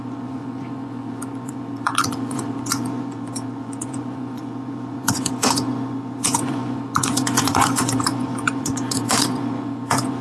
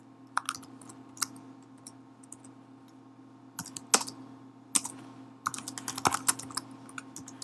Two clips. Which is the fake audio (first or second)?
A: first